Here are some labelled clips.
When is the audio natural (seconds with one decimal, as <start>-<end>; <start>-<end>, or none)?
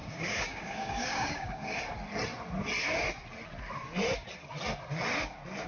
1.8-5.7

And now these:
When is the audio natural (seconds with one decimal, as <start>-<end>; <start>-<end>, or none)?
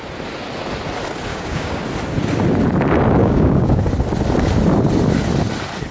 0.0-1.3; 1.8-3.2; 3.8-5.9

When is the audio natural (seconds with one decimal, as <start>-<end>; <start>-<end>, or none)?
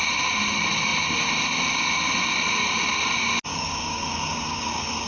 0.0-3.5